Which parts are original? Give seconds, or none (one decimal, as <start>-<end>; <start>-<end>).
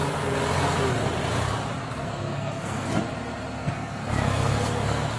0.0-1.8; 3.0-3.6